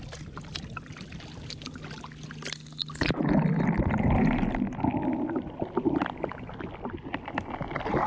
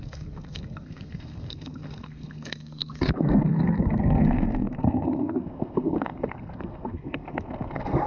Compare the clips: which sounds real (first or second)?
first